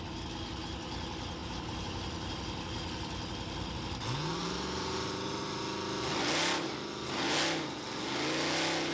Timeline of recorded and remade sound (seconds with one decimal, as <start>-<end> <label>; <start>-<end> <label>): 0.0-1.4 recorded; 1.4-2.4 remade; 2.4-4.4 recorded; 4.4-5.6 remade; 5.6-8.9 recorded